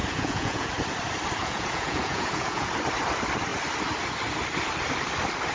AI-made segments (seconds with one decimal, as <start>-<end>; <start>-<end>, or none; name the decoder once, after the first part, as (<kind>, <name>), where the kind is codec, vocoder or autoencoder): 0.0-0.7 (vocoder, Vocos); 1.4-2.7